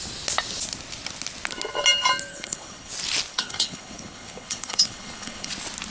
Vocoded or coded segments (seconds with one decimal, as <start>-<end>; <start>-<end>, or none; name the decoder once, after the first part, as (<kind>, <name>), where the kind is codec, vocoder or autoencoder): 2.3-2.9 (codec, HILCodec); 3.3-5.5